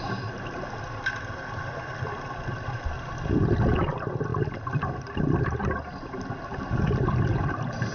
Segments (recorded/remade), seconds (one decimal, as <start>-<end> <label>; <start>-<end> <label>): 0.0-7.9 recorded